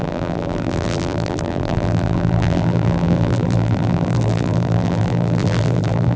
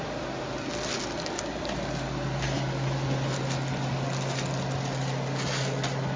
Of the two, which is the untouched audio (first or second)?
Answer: second